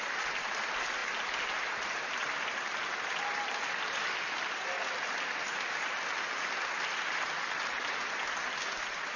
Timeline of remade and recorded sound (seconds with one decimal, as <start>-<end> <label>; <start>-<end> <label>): 0.0-9.2 recorded